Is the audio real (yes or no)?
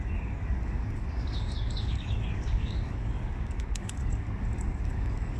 no